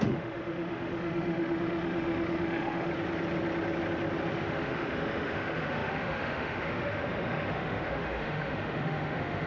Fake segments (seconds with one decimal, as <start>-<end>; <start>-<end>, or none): 0.0-2.9; 4.3-9.5